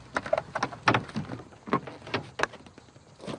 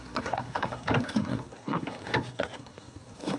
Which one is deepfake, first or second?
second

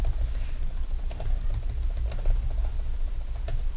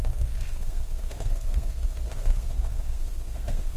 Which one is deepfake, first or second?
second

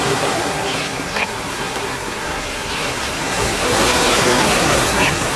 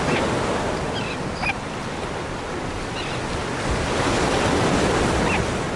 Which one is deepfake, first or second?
first